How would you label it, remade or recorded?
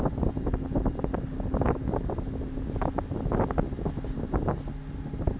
recorded